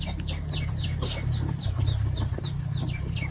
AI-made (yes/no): no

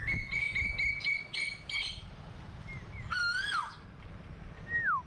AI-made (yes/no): no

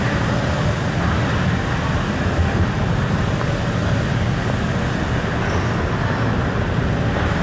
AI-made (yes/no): no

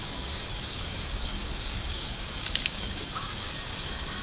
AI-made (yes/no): yes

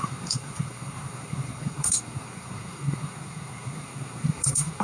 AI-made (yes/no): yes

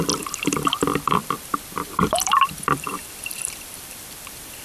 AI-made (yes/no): yes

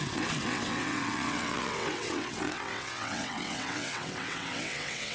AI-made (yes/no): yes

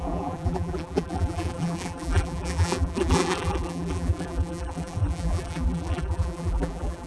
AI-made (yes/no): yes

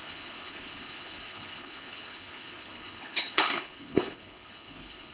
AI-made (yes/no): yes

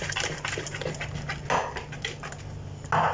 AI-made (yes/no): no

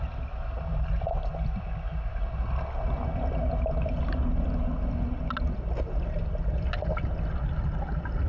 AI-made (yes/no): no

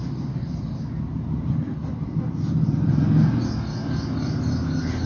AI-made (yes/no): no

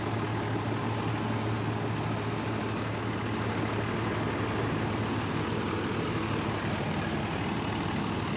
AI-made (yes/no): no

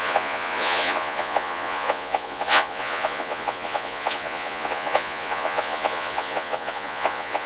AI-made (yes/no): yes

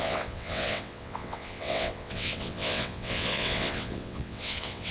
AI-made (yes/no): yes